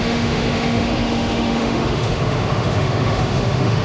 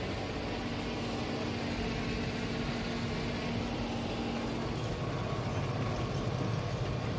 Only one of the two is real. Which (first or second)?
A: second